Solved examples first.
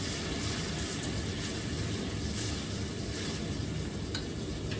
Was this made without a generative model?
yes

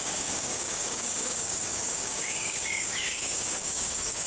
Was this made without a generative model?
no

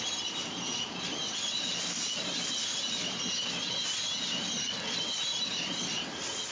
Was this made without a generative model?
yes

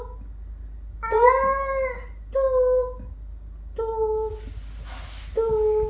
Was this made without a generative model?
yes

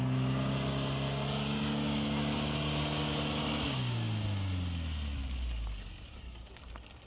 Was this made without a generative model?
yes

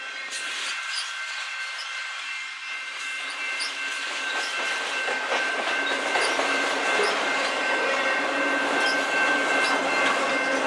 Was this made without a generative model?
yes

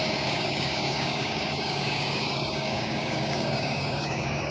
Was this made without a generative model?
no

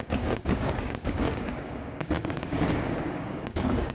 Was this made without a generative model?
no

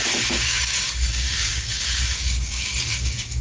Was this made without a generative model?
no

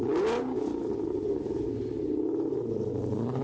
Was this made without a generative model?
yes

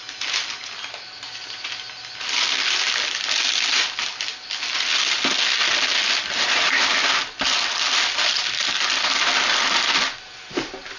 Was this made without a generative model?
yes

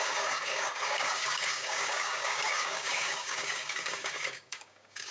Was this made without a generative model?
no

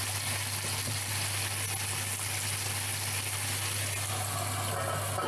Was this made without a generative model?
yes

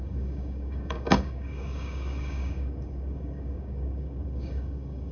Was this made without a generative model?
no